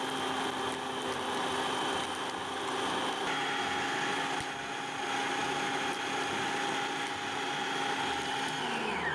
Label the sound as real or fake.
real